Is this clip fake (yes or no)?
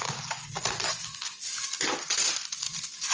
no